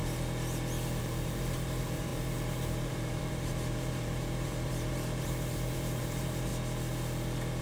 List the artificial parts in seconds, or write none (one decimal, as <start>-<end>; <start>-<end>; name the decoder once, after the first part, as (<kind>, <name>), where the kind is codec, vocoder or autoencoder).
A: 1.0-6.5 (vocoder, BigVGAN v2)